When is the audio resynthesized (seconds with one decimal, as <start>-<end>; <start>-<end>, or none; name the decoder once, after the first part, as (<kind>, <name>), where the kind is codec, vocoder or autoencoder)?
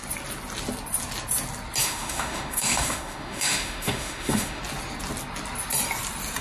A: 1.8-4.6 (autoencoder, DAC-VAE)